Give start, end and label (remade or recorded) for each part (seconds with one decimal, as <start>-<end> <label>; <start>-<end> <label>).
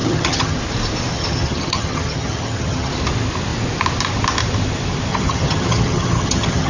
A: 0.0-0.6 remade; 0.6-1.1 recorded; 1.1-2.9 remade; 2.9-5.1 recorded; 5.1-6.7 remade